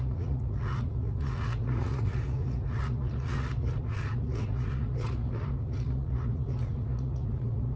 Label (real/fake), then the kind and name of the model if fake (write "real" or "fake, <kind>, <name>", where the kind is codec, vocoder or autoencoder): fake, vocoder, Vocos